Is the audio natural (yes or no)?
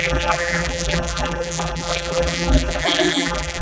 no